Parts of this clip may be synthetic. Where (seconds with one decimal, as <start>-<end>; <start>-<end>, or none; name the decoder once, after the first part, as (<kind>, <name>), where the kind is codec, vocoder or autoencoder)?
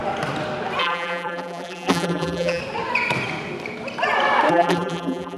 0.8-2.6 (vocoder, BigVGAN v2); 4.5-5.4